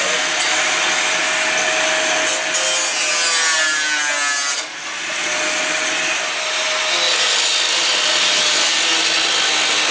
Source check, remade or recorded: recorded